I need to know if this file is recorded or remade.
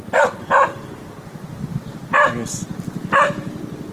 recorded